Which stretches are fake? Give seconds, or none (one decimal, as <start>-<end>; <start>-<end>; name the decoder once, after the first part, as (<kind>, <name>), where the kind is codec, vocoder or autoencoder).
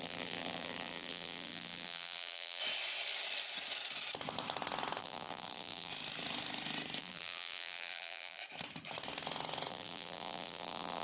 0.0-2.6 (vocoder, BigVGAN v2); 5.0-5.9; 7.0-8.4; 9.7-11.0